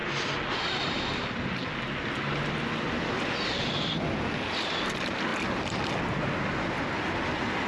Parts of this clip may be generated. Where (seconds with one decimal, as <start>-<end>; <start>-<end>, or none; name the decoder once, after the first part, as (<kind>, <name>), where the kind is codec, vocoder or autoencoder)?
none